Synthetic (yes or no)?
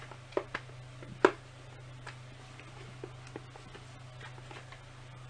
no